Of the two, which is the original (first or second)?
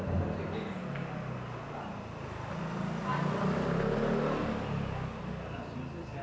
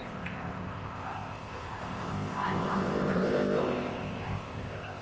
first